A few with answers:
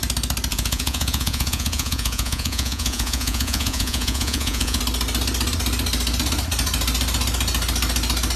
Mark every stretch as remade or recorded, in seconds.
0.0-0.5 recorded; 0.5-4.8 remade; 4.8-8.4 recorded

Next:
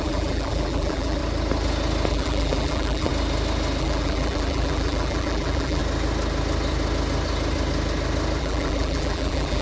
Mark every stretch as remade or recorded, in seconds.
0.0-1.2 remade; 1.2-2.1 recorded; 2.1-3.1 remade; 3.1-3.8 recorded; 3.8-5.8 remade; 5.8-8.4 recorded; 8.4-9.6 remade

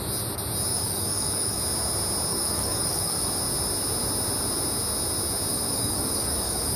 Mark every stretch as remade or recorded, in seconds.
0.0-0.7 recorded; 0.7-1.6 remade; 1.6-2.3 recorded; 2.3-3.3 remade; 3.3-5.5 recorded; 5.5-6.8 remade

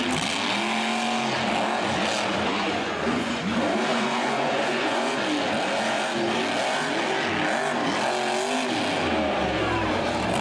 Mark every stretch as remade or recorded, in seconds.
0.0-2.5 recorded; 2.5-3.4 remade; 3.4-3.9 recorded; 3.9-5.2 remade; 5.2-10.4 recorded

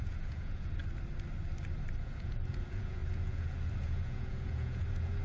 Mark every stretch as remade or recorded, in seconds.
0.0-0.8 remade; 0.8-2.0 recorded; 2.0-5.2 remade

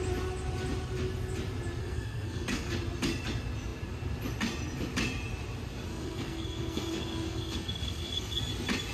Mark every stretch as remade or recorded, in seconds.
0.0-1.8 recorded; 1.8-2.7 remade; 2.7-5.9 recorded; 5.9-8.4 remade; 8.4-8.9 recorded